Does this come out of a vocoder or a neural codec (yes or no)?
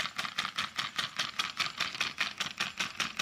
no